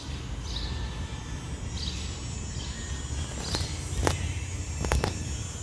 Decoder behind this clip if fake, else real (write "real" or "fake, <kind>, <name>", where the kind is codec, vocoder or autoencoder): real